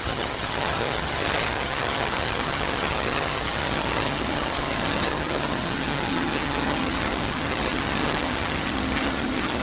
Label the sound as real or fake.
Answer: fake